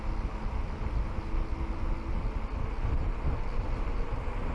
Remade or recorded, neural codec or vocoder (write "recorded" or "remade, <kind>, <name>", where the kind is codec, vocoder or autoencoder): recorded